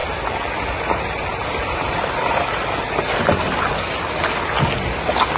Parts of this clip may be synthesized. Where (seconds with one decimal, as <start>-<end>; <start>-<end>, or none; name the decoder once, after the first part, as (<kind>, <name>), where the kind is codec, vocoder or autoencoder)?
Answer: none